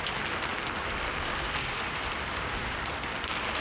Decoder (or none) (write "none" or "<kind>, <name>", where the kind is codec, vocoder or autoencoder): none